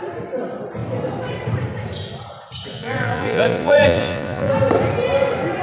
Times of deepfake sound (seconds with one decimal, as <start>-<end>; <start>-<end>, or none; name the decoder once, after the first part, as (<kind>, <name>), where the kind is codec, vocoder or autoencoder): 2.7-4.5 (vocoder, Vocos)